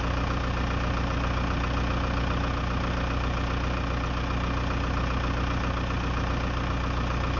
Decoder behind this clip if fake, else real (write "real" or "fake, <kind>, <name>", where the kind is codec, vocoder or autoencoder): real